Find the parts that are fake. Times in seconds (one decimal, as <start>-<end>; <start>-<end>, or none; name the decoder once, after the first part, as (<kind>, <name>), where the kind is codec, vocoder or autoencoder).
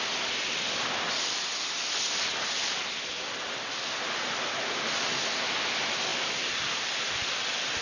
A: none